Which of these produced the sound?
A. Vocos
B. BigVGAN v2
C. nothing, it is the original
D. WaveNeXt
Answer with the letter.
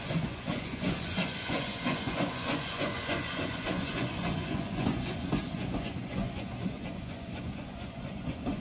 A